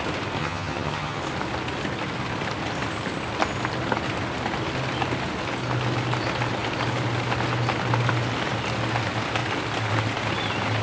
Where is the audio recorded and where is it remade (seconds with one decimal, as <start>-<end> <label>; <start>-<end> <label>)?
0.0-0.4 recorded; 0.4-1.2 remade; 1.2-10.8 recorded